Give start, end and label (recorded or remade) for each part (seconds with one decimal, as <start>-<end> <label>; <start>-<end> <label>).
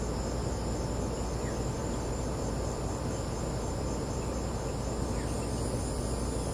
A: 0.0-1.8 recorded; 1.8-5.4 remade; 5.4-6.5 recorded